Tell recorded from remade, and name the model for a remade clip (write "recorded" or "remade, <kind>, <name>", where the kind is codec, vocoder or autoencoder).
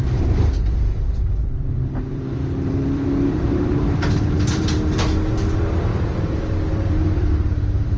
remade, vocoder, BigVGAN v2